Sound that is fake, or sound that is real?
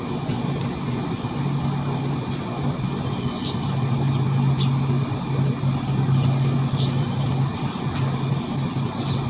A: real